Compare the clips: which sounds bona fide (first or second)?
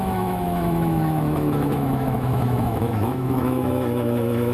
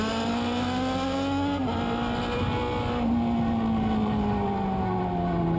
second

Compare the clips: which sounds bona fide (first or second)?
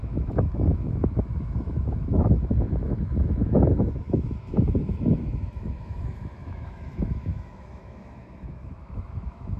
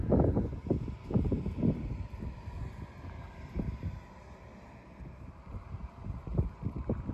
second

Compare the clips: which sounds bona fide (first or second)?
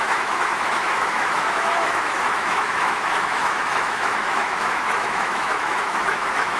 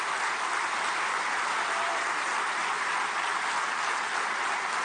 second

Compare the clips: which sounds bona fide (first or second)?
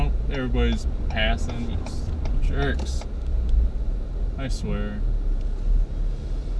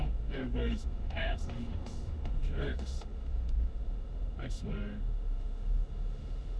first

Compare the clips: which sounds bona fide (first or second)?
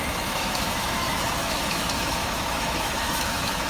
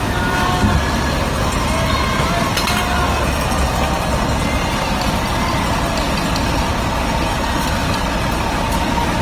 second